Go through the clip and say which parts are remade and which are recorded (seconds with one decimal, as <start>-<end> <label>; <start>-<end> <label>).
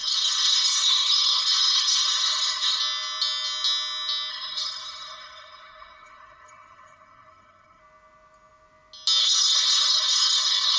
0.0-2.8 remade; 2.8-4.3 recorded; 4.3-7.8 remade; 7.8-9.2 recorded; 9.2-10.8 remade